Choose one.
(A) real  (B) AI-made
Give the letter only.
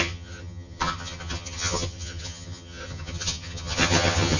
B